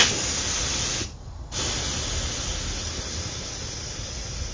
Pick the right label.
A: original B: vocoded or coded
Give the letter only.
A